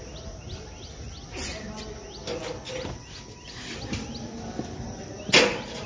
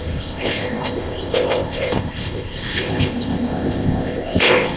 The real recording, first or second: first